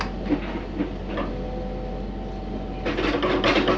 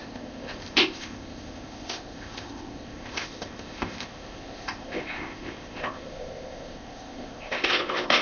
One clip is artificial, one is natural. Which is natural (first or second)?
first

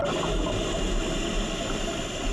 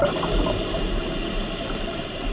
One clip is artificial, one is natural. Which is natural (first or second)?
first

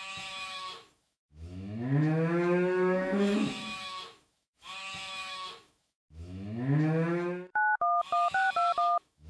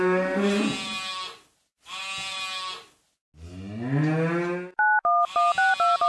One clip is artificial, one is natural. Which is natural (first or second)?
second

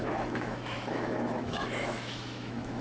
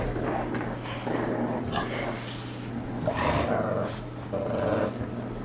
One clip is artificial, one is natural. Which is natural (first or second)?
second